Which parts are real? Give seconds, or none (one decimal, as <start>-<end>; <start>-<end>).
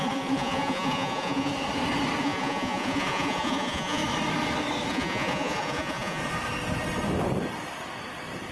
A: 1.5-2.2; 4.0-4.9; 6.2-8.5